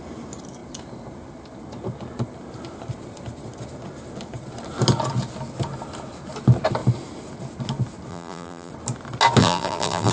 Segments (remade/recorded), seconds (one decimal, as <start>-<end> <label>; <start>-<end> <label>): 0.0-8.1 recorded; 8.1-8.7 remade; 8.7-9.4 recorded; 9.4-10.1 remade